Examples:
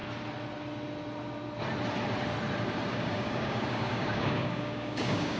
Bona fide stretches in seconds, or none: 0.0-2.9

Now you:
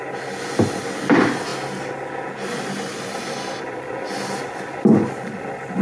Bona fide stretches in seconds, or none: 0.0-5.8